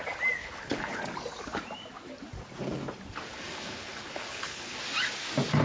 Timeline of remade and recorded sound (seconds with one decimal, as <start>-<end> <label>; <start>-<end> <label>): 0.0-0.4 recorded; 0.4-1.0 remade; 1.0-3.3 recorded; 3.3-4.8 remade; 4.8-5.6 recorded